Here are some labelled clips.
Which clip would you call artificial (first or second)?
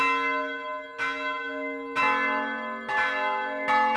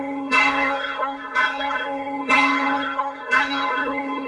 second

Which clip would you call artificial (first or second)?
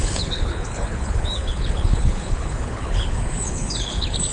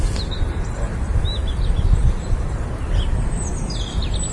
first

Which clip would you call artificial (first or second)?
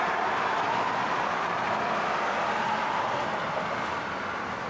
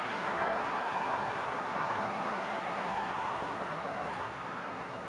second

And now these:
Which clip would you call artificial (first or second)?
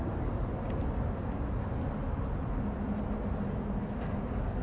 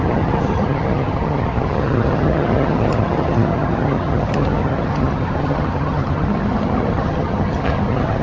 second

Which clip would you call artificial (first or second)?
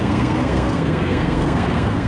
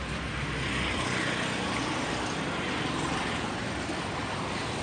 first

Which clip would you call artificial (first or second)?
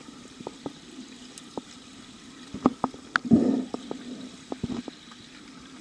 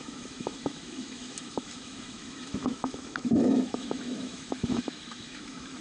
second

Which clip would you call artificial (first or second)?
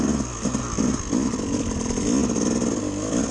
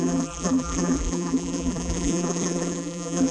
second